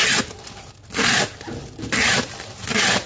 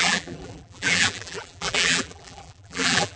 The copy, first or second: second